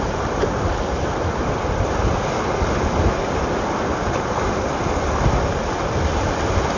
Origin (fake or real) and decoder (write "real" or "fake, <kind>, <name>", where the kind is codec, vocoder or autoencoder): real